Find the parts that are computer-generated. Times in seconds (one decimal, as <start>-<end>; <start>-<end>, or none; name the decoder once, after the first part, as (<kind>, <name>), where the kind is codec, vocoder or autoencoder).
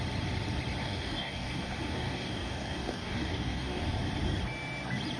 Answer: 0.8-3.9 (codec, DAC)